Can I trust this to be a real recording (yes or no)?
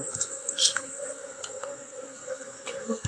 no